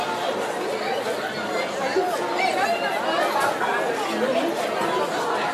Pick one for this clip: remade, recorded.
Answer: recorded